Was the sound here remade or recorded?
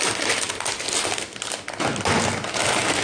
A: recorded